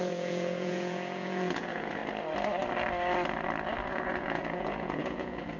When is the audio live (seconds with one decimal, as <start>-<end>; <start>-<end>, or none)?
2.0-3.9